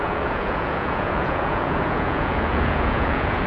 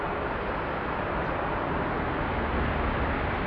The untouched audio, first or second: second